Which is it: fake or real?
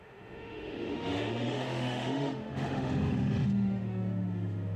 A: fake